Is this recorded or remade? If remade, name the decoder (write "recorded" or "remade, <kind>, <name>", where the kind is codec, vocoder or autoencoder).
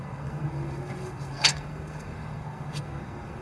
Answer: remade, codec, SNAC